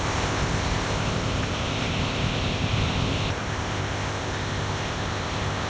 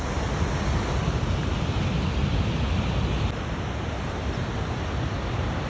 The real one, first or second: second